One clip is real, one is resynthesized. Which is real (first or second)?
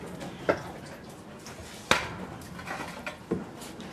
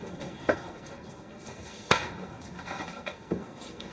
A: first